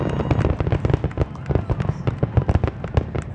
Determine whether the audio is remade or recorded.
recorded